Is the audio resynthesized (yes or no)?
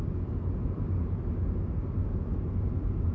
no